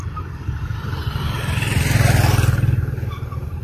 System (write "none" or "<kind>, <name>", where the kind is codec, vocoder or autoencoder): none